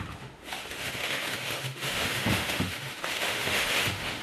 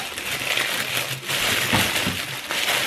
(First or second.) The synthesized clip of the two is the first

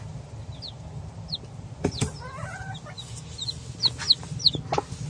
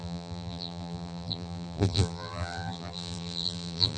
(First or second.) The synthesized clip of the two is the second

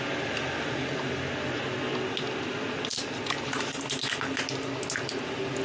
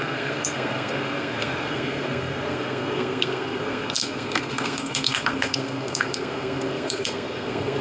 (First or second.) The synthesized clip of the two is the second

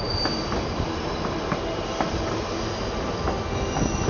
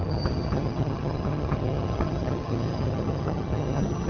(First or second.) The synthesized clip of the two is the second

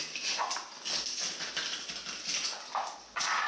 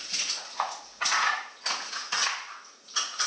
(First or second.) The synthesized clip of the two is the second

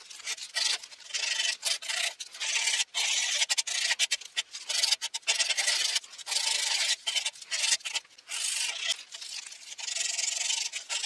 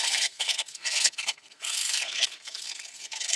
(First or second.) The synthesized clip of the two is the second